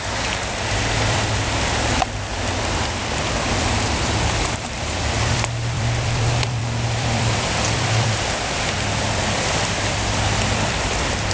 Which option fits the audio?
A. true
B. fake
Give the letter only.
B